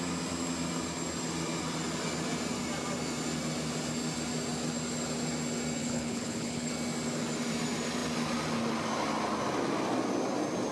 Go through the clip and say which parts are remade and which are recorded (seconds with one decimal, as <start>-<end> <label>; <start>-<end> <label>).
0.0-5.8 recorded; 5.8-6.7 remade; 6.7-10.7 recorded

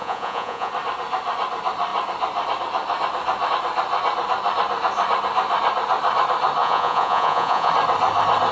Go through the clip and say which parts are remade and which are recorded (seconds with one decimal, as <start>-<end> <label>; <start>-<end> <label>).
0.0-0.7 remade; 0.7-6.6 recorded; 6.6-7.7 remade; 7.7-8.5 recorded

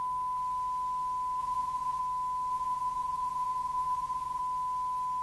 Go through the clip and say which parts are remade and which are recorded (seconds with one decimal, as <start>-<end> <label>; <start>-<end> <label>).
0.0-1.4 recorded; 1.4-2.0 remade; 2.0-2.5 recorded; 2.5-4.4 remade; 4.4-5.2 recorded

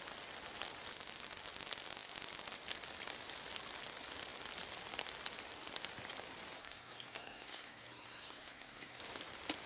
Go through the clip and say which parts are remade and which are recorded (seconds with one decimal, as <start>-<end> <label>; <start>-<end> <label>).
0.0-6.6 recorded; 6.6-9.0 remade; 9.0-9.7 recorded